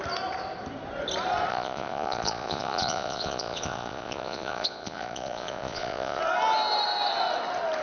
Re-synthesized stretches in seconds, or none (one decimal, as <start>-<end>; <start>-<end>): 1.5-6.2